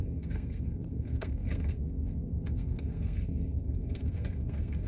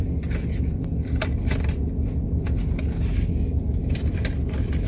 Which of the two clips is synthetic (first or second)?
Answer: first